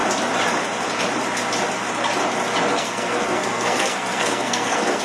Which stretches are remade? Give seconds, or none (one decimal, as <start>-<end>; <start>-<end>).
2.7-5.0